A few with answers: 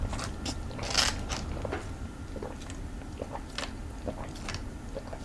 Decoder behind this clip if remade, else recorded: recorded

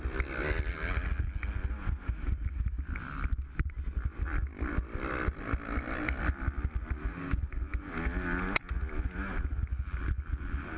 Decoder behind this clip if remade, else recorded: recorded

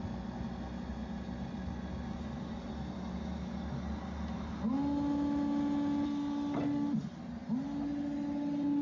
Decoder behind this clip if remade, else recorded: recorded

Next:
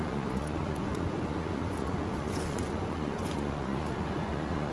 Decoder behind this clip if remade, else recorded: remade, vocoder, Vocos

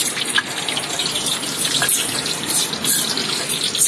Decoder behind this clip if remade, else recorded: recorded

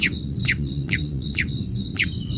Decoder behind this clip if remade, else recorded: remade, vocoder, Vocos